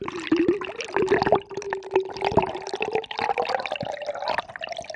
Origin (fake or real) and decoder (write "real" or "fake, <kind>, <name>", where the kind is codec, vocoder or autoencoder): real